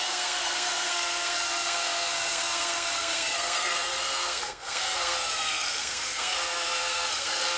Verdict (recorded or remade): remade